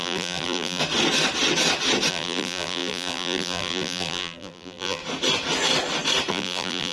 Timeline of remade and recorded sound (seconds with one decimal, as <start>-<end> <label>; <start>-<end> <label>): 0.0-0.8 remade; 0.8-2.1 recorded; 2.1-5.0 remade; 5.0-6.3 recorded; 6.3-6.9 remade